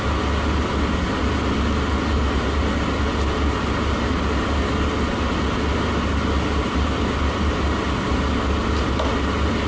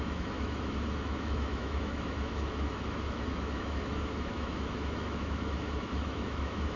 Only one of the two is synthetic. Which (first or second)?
second